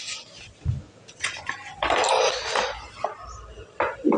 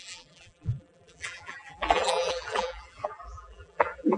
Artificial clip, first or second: second